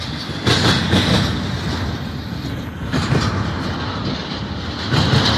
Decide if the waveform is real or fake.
real